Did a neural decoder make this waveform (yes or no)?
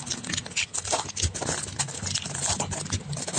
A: no